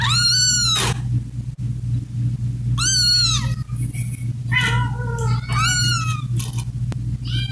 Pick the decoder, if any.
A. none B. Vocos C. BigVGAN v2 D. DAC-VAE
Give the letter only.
A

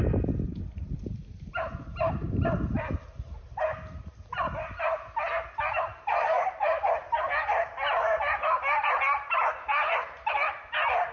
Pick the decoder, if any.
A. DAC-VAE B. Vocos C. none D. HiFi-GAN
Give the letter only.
C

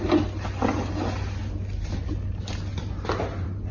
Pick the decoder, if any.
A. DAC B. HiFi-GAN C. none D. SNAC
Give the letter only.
C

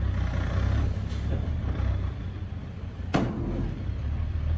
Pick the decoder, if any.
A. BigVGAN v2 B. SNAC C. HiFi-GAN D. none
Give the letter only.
D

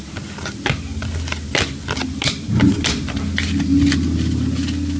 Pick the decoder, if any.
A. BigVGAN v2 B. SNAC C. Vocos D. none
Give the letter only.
D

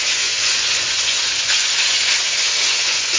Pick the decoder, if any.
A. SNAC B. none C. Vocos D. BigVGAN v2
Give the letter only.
C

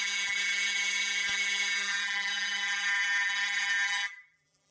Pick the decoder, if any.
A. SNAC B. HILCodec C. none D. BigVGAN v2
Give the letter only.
D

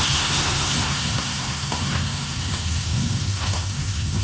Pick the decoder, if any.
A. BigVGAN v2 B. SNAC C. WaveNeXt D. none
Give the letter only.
B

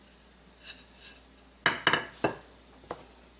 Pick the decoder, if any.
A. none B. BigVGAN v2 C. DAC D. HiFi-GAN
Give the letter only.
A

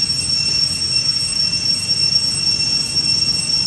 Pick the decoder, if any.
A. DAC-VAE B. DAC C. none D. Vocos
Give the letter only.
C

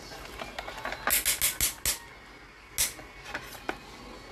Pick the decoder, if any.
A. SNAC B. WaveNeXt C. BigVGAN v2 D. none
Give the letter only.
D